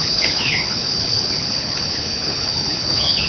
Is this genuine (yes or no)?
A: no